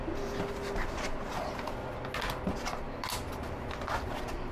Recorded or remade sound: recorded